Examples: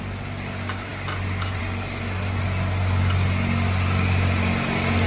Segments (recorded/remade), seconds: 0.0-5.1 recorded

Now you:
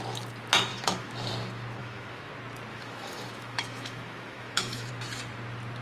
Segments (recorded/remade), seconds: 0.0-0.7 recorded; 0.7-1.3 remade; 1.3-1.8 recorded; 1.8-2.3 remade; 2.3-2.7 recorded; 2.7-4.9 remade; 4.9-5.8 recorded

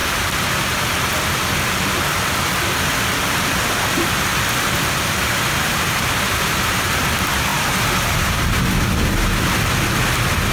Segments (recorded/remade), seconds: 0.0-4.3 recorded; 4.3-6.9 remade; 6.9-7.5 recorded; 7.5-8.4 remade; 8.4-10.5 recorded

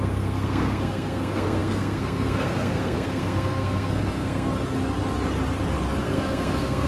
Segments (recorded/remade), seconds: 0.0-4.5 remade; 4.5-6.0 recorded; 6.0-6.9 remade